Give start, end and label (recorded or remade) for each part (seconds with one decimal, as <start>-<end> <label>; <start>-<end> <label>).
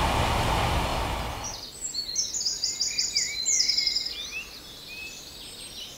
0.0-6.0 recorded